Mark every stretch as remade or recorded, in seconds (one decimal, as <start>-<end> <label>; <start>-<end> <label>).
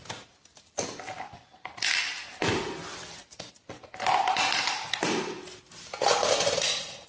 0.0-7.1 recorded